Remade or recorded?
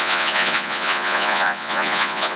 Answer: remade